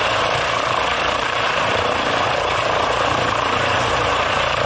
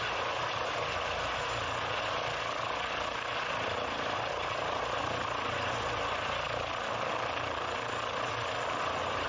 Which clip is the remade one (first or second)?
first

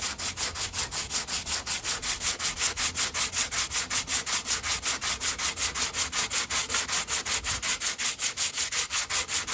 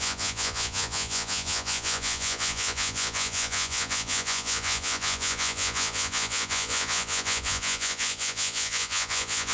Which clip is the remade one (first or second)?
second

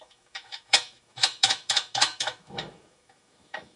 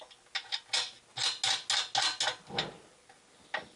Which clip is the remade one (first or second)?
first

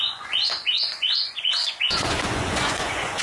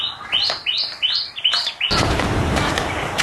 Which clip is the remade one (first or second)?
first